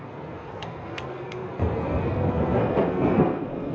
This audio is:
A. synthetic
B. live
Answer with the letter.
A